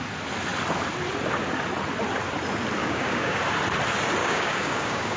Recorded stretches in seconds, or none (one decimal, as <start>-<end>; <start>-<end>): 0.0-2.8; 3.4-4.2